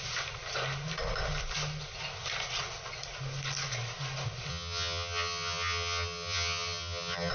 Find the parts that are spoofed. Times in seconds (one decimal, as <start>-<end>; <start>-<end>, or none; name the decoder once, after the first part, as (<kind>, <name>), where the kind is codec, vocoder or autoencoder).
4.5-7.3 (vocoder, HiFi-GAN)